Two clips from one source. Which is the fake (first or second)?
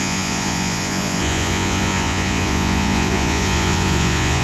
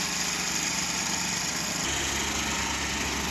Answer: first